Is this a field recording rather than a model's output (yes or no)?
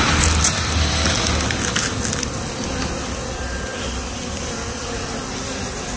yes